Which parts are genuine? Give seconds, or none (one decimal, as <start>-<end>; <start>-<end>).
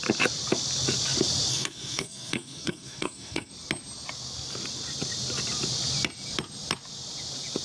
0.0-1.5; 3.5-7.6